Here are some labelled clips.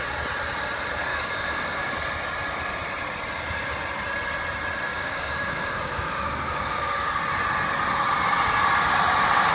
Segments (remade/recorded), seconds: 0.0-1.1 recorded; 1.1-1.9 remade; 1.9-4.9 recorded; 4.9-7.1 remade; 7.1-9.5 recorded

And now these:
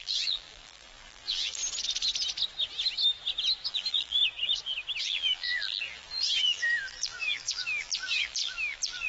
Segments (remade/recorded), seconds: 0.0-1.6 remade; 1.6-3.7 recorded; 3.7-4.2 remade; 4.2-5.0 recorded; 5.0-9.1 remade

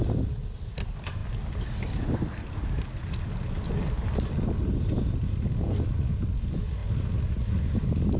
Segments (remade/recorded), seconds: 0.0-8.2 recorded

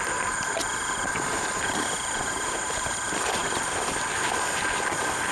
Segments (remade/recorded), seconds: 0.0-5.3 recorded

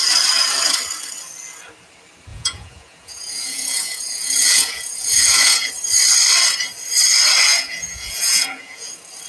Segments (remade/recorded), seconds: 0.0-2.3 recorded; 2.3-5.7 remade; 5.7-7.5 recorded; 7.5-8.9 remade; 8.9-9.3 recorded

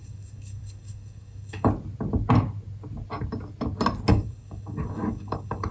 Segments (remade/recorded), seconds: 0.0-1.7 remade; 1.7-4.1 recorded; 4.1-5.7 remade

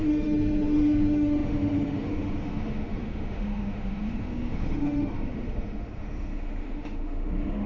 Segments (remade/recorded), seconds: 0.0-7.7 remade